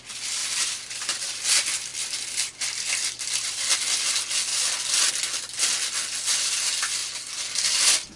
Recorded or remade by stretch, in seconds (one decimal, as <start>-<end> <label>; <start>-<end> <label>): 0.0-0.4 recorded; 0.4-1.4 remade; 1.4-1.9 recorded; 1.9-4.1 remade; 4.1-4.5 recorded; 4.5-5.1 remade; 5.1-8.2 recorded

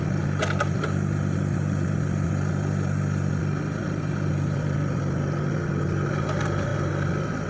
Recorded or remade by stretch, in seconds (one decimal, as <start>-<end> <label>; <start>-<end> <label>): 0.0-3.8 recorded; 3.8-5.6 remade; 5.6-6.7 recorded; 6.7-7.5 remade

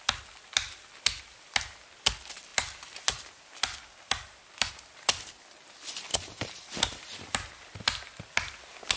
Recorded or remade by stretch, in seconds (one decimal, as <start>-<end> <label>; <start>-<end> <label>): 0.0-6.1 recorded; 6.1-7.0 remade; 7.0-9.0 recorded

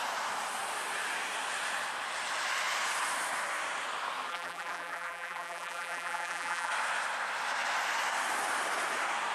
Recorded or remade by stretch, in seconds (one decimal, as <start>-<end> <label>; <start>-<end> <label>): 0.0-4.3 recorded; 4.3-6.7 remade; 6.7-9.3 recorded

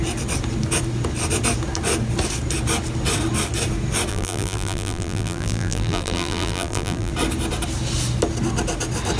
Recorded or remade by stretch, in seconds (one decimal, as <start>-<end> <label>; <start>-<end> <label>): 0.0-4.1 recorded; 4.1-7.1 remade; 7.1-9.2 recorded

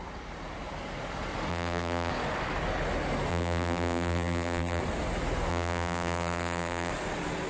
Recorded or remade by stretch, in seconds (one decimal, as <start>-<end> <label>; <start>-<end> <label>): 0.0-1.5 recorded; 1.5-2.1 remade; 2.1-3.3 recorded; 3.3-4.8 remade; 4.8-5.5 recorded; 5.5-6.9 remade; 6.9-7.5 recorded

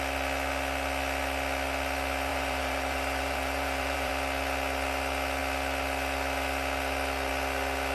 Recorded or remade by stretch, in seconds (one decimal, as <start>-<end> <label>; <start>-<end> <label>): 0.0-2.3 recorded; 2.3-4.1 remade; 4.1-7.9 recorded

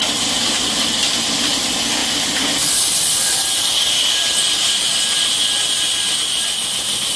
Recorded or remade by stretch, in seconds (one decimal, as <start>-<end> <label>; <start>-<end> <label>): 0.0-7.2 recorded